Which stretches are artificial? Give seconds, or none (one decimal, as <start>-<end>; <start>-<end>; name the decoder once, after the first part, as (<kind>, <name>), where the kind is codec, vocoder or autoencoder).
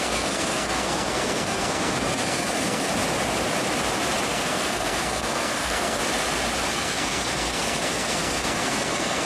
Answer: 0.0-2.9 (codec, SNAC); 4.3-6.0; 6.7-9.3